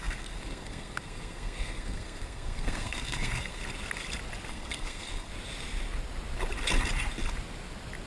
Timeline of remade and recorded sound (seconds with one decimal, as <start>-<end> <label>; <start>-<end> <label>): 0.0-3.6 remade; 3.6-4.5 recorded; 4.5-5.3 remade; 5.3-8.1 recorded